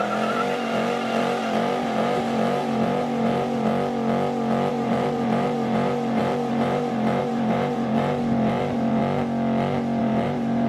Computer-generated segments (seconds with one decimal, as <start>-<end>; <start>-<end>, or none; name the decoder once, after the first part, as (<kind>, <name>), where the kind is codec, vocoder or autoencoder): 0.0-3.7 (vocoder, BigVGAN v2); 4.7-9.0; 10.0-10.7